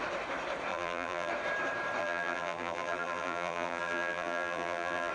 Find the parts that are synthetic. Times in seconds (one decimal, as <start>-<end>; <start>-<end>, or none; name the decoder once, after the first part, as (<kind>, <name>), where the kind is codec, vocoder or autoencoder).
0.7-1.3 (vocoder, BigVGAN v2); 2.0-5.1